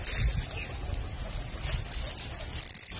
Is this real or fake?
real